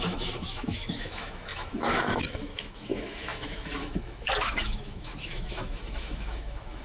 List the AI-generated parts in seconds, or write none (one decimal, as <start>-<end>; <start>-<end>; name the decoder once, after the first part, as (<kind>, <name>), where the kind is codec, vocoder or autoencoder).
0.0-6.8 (autoencoder, DAC-VAE)